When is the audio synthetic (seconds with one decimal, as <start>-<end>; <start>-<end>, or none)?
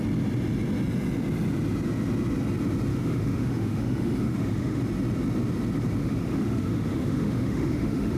2.9-4.8; 6.0-8.2